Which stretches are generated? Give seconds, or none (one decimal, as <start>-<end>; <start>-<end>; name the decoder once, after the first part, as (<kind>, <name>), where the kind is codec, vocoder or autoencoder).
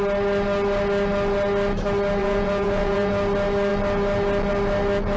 2.2-3.1 (vocoder, Vocos)